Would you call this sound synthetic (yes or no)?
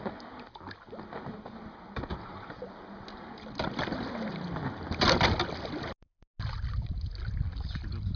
no